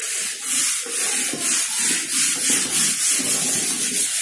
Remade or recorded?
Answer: recorded